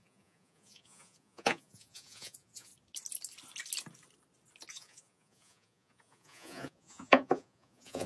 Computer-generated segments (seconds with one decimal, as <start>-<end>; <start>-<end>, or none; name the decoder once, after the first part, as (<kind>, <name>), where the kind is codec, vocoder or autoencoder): 0.0-2.7 (vocoder, Vocos); 4.7-8.1